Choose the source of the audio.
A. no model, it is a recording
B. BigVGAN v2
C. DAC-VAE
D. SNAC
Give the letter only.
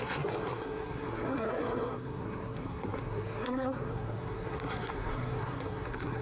D